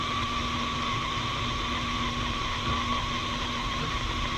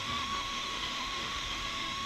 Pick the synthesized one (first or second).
second